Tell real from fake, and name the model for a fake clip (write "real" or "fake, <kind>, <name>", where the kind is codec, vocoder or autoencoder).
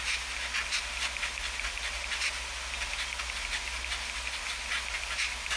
real